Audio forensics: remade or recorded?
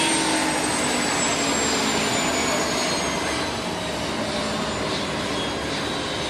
recorded